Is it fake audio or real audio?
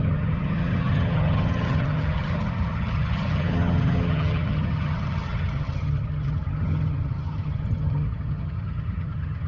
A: fake